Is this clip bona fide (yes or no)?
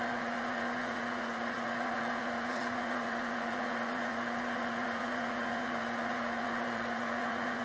no